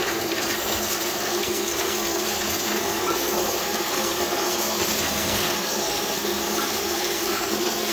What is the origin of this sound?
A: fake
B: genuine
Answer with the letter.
A